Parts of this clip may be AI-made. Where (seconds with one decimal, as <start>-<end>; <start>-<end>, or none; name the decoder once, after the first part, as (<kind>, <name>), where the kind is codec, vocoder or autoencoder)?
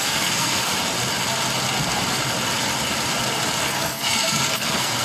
0.0-0.7 (codec, SNAC); 3.6-5.0